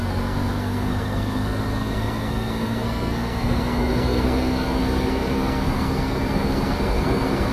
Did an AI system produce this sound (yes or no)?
yes